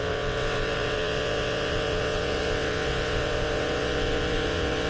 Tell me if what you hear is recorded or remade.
remade